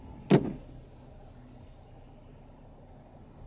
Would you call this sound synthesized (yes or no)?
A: no